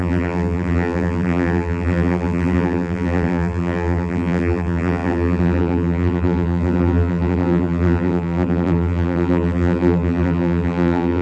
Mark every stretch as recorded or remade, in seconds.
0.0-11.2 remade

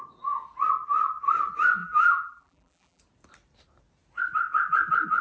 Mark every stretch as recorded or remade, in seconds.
0.0-1.8 recorded; 1.8-3.0 remade; 3.0-5.2 recorded

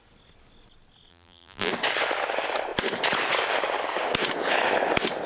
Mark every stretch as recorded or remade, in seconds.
0.0-1.1 recorded; 1.1-1.7 remade; 1.7-5.3 recorded

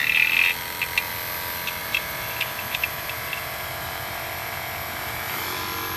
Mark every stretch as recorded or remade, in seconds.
0.0-1.8 recorded; 1.8-5.4 remade; 5.4-6.0 recorded